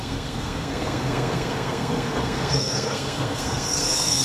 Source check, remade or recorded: remade